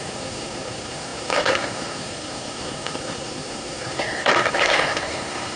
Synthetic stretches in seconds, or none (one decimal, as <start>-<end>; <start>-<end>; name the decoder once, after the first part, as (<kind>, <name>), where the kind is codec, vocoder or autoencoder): 0.0-5.6 (codec, SNAC)